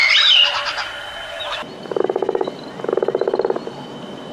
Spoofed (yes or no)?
no